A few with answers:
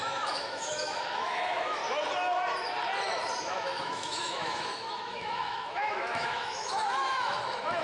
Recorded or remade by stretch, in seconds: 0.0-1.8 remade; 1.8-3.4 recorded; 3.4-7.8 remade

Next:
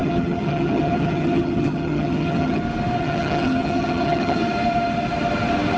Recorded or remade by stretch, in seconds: 0.0-2.6 remade; 2.6-3.0 recorded; 3.0-4.4 remade; 4.4-5.8 recorded

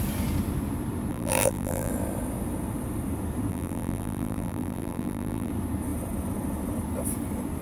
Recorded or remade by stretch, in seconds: 0.0-1.1 recorded; 1.1-1.9 remade; 1.9-3.5 recorded; 3.5-5.5 remade; 5.5-7.6 recorded